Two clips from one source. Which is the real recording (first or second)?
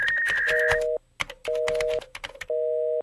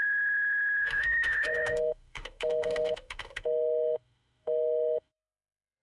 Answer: first